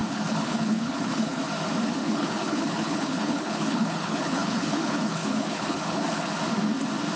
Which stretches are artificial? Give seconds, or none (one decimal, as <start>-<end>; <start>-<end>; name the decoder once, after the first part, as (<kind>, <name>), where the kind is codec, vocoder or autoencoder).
0.0-1.4 (codec, HILCodec); 2.0-6.3